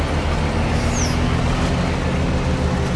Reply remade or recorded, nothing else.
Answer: recorded